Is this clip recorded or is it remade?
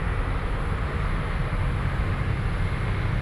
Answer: recorded